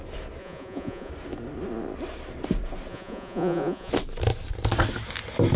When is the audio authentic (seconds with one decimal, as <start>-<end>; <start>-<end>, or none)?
0.0-0.4; 1.1-2.9; 3.9-5.6